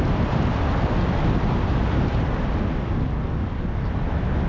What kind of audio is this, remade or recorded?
recorded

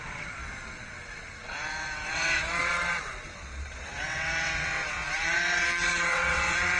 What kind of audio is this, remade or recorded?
remade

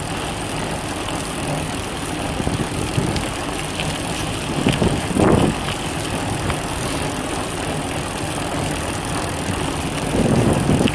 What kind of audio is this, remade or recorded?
recorded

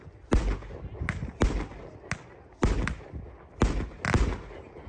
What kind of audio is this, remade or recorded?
recorded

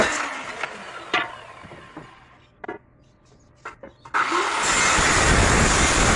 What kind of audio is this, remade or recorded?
recorded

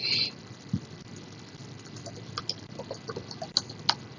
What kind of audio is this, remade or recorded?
recorded